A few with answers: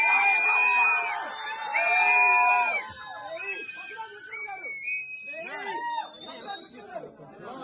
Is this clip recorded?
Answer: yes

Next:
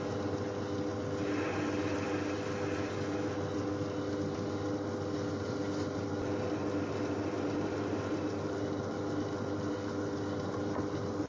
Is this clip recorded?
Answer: yes